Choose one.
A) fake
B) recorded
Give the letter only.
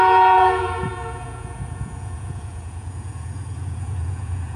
A